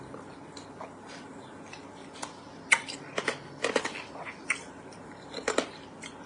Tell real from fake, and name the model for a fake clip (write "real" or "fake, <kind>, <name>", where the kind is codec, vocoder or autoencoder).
real